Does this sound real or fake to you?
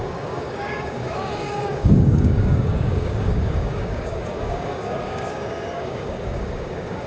fake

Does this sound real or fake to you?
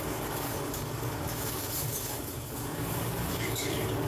fake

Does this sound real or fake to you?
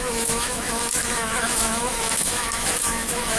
fake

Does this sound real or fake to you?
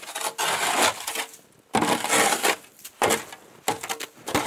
real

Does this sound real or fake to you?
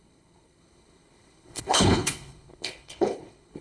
fake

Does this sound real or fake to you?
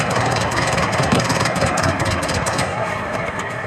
fake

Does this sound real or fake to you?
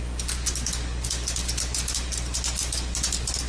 real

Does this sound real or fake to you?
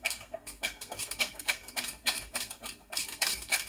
fake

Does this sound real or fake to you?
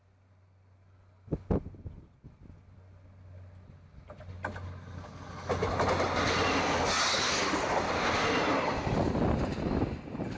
real